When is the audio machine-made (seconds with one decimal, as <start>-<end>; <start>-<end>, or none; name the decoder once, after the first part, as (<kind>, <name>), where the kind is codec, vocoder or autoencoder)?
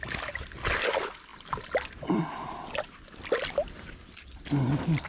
none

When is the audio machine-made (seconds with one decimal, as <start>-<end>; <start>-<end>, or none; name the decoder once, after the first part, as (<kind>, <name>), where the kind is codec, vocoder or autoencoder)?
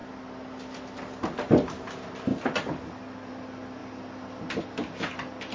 none